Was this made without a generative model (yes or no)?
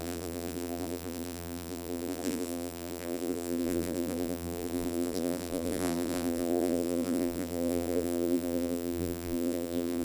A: no